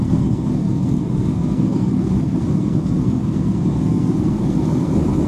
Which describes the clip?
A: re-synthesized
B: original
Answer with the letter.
A